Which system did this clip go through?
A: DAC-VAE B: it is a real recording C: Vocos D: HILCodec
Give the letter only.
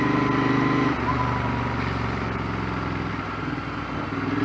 B